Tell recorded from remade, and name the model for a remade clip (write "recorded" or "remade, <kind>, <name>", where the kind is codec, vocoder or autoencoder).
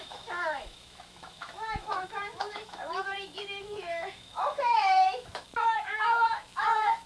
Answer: remade, autoencoder, DAC-VAE